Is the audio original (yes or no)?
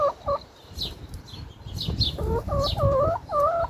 yes